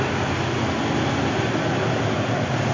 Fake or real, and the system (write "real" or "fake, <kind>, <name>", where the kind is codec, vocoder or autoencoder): real